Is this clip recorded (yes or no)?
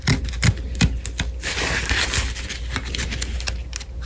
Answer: yes